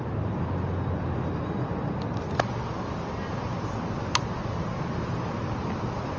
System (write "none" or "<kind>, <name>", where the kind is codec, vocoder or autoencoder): none